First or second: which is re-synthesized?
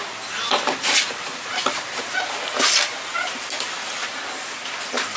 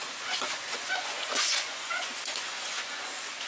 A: second